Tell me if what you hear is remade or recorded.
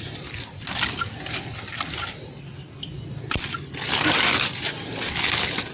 recorded